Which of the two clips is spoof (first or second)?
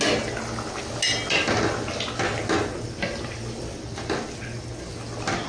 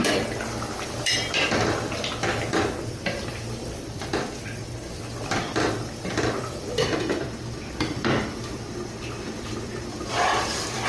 second